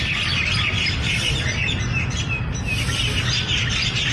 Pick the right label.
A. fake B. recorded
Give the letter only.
B